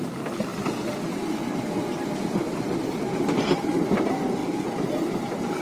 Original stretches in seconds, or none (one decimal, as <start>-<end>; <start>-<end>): 0.0-5.6